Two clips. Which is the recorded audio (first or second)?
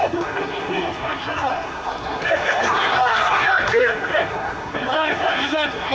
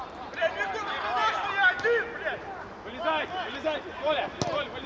second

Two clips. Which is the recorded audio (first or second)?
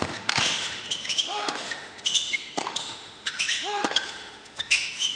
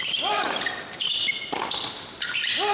second